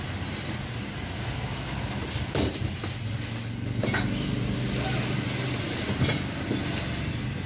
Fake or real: real